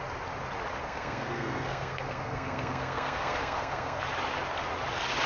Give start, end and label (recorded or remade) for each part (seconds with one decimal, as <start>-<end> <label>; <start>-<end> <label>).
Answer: 0.0-0.8 recorded; 0.8-4.0 remade; 4.0-5.3 recorded